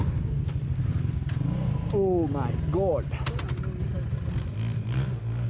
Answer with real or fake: real